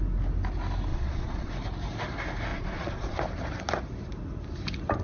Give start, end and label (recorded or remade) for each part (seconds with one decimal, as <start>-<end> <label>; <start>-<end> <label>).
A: 0.0-0.9 recorded; 0.9-1.5 remade; 1.5-2.5 recorded; 2.5-3.2 remade; 3.2-5.0 recorded